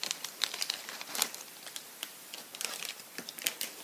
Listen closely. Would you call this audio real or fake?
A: fake